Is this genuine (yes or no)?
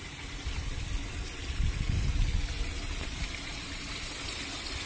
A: yes